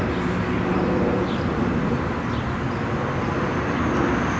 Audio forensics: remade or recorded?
recorded